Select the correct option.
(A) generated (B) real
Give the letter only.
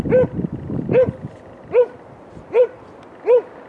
B